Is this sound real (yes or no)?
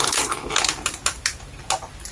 no